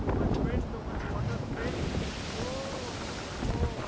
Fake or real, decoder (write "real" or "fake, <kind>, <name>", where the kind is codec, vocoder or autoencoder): real